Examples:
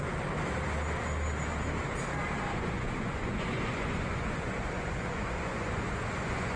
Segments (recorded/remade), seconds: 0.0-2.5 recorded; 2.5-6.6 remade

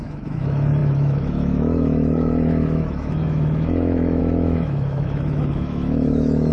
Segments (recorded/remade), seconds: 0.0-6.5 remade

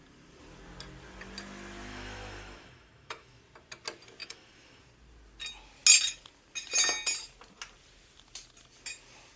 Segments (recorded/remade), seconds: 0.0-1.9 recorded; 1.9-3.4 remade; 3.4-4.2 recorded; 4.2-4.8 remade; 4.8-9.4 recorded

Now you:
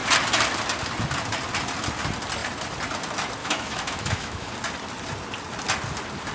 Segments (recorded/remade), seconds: 0.0-3.4 recorded; 3.4-4.5 remade; 4.5-6.3 recorded

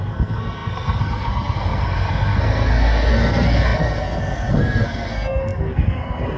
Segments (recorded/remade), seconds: 0.0-6.4 remade

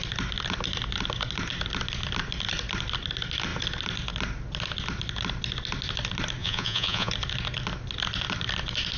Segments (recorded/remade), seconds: 0.0-6.4 recorded; 6.4-7.1 remade; 7.1-9.0 recorded